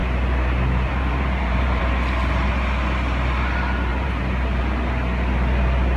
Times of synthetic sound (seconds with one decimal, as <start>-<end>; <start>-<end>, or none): 0.0-1.8; 3.9-4.6